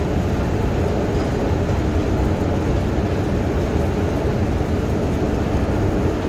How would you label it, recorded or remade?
recorded